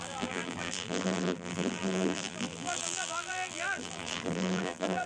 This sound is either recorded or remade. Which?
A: remade